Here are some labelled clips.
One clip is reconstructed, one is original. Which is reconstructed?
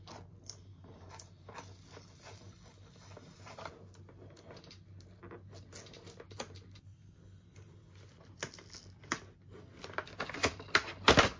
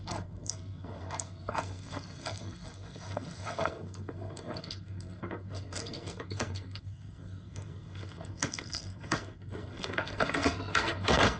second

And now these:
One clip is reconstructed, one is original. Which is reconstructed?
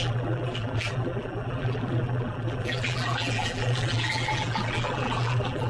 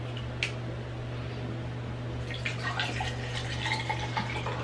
first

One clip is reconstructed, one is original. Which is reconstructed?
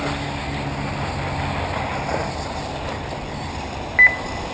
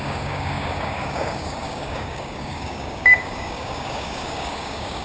second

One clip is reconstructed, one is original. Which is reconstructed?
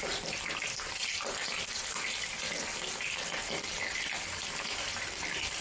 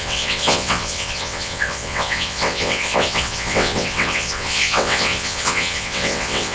second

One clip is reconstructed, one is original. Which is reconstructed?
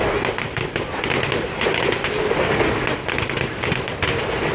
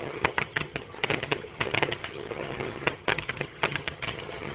second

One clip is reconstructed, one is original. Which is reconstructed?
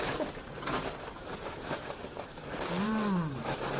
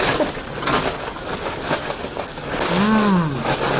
first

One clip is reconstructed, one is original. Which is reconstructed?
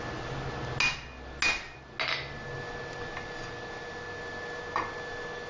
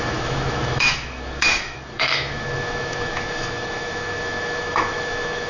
second